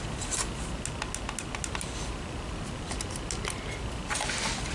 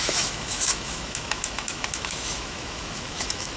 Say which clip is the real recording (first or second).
first